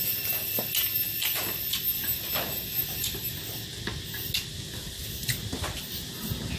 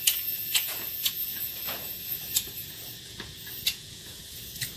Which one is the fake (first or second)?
second